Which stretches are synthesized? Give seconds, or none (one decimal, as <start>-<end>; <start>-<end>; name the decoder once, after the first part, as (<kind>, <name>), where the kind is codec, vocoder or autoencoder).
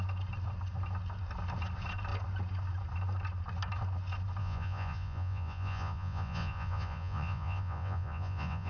4.4-8.7 (vocoder, Vocos)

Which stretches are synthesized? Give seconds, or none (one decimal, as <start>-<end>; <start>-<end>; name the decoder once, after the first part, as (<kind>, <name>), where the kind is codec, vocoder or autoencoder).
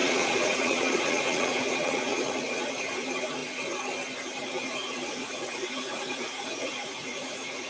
0.0-3.4 (vocoder, Vocos); 4.4-7.7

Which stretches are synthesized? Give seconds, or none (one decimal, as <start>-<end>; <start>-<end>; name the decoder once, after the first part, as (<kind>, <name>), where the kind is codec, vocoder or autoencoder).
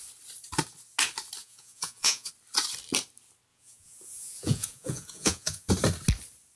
1.4-2.3 (vocoder, Vocos); 3.5-5.7